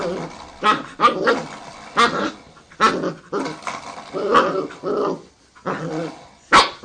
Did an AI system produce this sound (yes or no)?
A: no